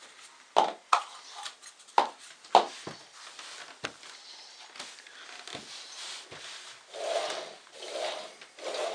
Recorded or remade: recorded